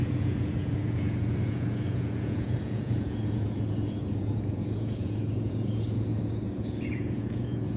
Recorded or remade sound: remade